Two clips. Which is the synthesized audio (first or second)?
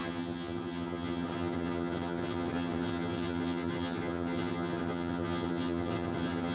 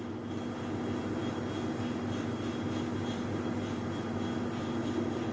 first